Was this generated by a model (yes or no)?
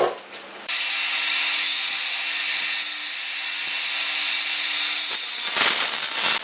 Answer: no